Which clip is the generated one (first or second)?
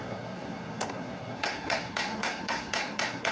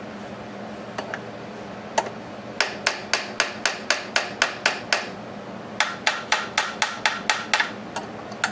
first